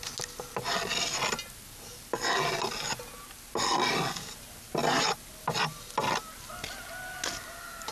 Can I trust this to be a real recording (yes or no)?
yes